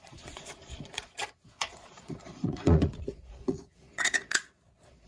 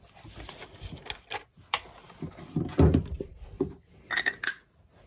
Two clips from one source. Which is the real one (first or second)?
second